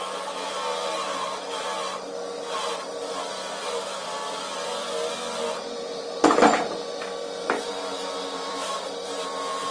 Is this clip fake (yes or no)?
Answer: yes